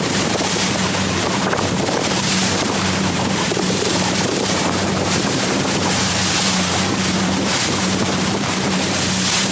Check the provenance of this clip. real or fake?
fake